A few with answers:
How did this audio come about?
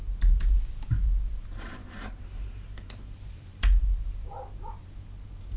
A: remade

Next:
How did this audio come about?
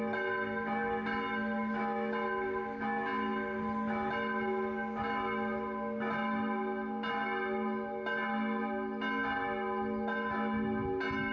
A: recorded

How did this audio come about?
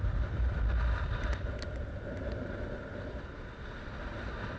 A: recorded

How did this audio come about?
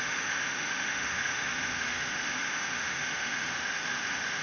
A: remade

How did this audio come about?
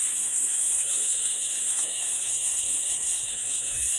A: remade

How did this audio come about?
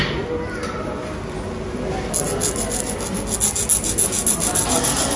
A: recorded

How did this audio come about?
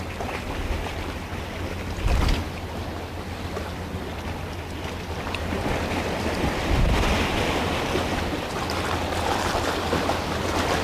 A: remade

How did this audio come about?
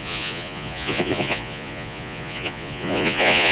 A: remade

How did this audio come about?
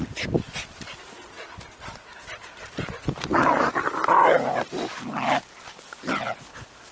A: recorded